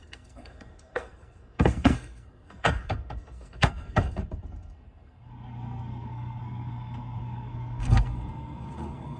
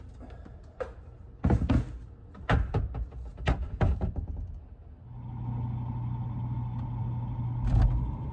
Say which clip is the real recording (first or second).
second